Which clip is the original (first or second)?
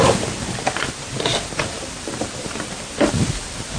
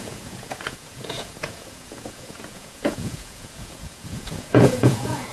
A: first